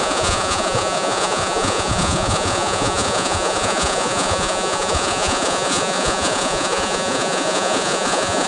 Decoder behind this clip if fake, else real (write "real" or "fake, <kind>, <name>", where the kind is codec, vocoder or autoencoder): fake, vocoder, Vocos